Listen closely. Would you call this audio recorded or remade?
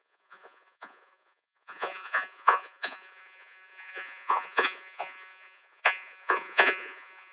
remade